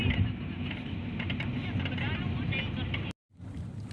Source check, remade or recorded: recorded